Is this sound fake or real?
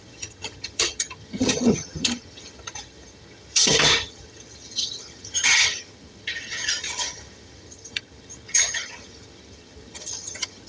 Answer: fake